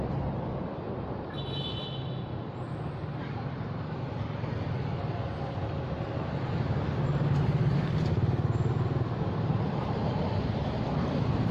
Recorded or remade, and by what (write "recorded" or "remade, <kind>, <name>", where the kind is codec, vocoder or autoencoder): recorded